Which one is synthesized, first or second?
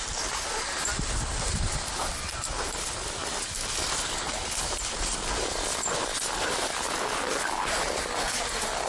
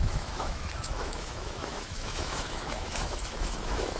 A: second